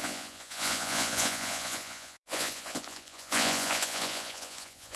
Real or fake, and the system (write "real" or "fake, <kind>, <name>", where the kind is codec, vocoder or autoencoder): fake, vocoder, Vocos